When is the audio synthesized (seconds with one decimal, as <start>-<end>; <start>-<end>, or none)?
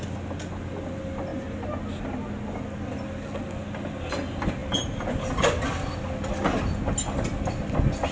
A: none